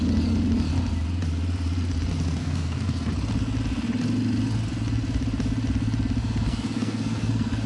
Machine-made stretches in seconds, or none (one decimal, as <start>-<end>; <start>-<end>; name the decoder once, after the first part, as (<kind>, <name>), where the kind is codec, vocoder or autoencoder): 2.4-3.1 (codec, SNAC); 6.2-7.7